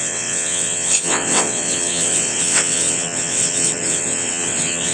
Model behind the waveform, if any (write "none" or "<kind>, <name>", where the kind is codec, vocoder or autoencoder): vocoder, WaveNeXt